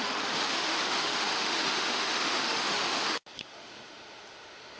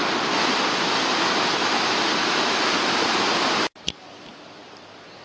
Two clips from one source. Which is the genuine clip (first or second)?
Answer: second